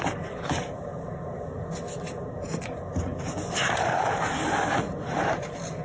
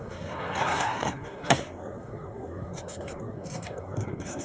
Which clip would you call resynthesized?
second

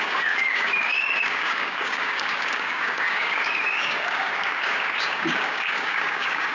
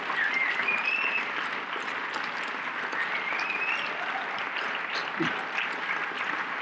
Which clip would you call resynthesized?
first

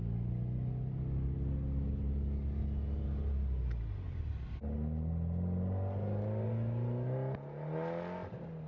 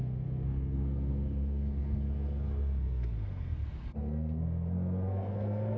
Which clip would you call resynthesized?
second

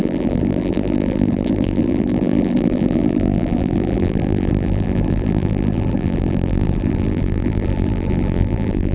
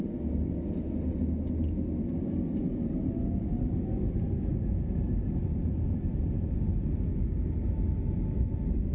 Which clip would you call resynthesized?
first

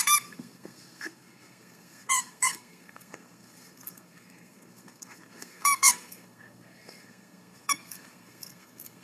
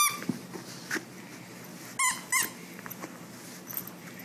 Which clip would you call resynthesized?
first